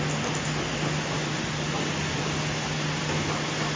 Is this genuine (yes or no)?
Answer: yes